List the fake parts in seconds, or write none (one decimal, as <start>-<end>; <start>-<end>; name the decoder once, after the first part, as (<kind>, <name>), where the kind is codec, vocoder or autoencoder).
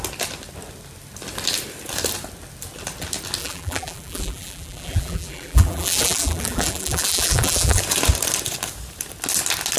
3.4-7.8 (vocoder, BigVGAN v2)